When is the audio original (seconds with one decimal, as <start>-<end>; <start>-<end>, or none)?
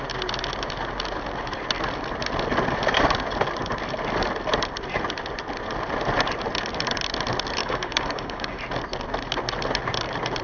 0.0-7.6; 8.6-10.4